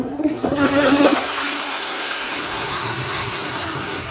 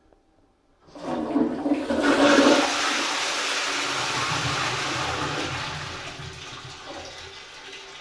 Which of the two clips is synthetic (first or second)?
first